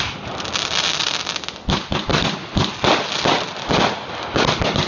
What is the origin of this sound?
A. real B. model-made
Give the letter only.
A